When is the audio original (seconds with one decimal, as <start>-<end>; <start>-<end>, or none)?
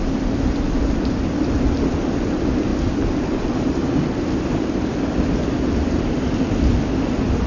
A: 0.0-7.5